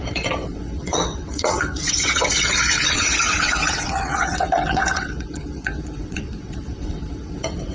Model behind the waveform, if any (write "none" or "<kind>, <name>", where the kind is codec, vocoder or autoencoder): vocoder, WaveNeXt